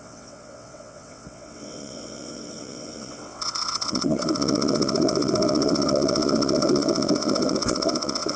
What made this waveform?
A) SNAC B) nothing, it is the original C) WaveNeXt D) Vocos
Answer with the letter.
C